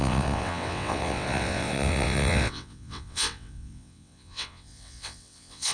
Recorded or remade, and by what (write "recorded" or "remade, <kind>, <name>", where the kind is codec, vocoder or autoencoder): remade, vocoder, WaveNeXt